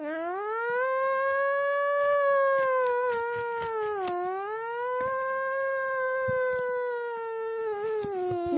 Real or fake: real